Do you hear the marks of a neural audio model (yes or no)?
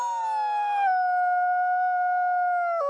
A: no